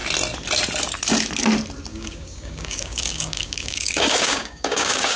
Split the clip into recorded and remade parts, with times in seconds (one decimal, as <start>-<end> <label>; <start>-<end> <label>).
0.0-1.9 recorded; 1.9-5.2 remade